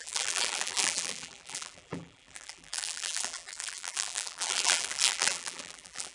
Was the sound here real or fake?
fake